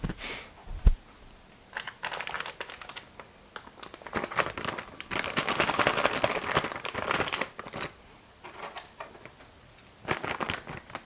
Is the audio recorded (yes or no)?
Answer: yes